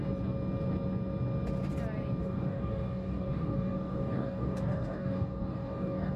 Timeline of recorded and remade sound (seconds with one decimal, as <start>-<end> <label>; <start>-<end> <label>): 0.0-2.2 recorded; 2.2-6.2 remade